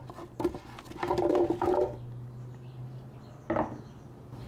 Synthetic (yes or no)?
no